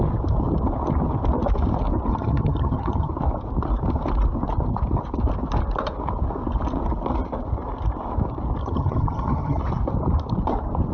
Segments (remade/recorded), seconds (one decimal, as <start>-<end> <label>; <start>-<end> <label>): 0.0-2.1 recorded; 2.1-3.1 remade; 3.1-8.6 recorded; 8.6-9.6 remade; 9.6-10.9 recorded